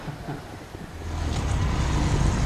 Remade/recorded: recorded